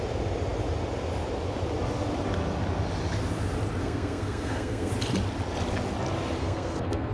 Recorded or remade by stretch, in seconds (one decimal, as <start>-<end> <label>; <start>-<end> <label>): 0.0-3.8 recorded; 3.8-4.9 remade; 4.9-6.4 recorded; 6.4-7.1 remade